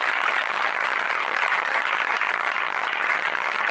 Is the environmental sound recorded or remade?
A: remade